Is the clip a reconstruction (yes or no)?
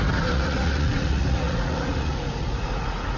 yes